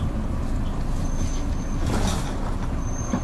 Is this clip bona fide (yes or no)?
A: yes